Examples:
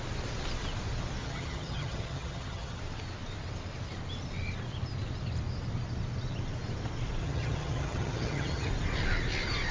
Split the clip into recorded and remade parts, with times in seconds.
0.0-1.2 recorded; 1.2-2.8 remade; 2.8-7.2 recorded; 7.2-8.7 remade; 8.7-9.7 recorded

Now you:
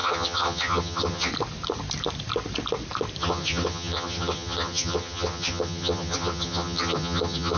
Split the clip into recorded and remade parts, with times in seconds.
0.0-1.3 remade; 1.3-3.2 recorded; 3.2-7.6 remade

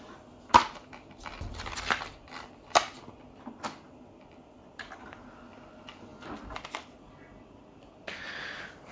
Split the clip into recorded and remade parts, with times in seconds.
0.0-8.9 recorded

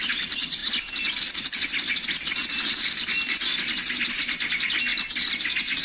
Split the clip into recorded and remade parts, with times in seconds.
0.0-5.8 recorded

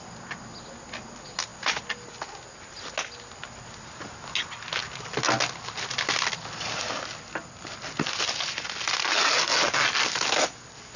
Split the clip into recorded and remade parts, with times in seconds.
0.0-11.0 recorded

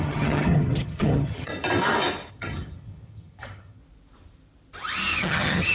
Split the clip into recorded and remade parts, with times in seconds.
0.0-1.5 remade; 1.5-2.3 recorded; 2.3-3.8 remade; 3.8-5.2 recorded; 5.2-5.7 remade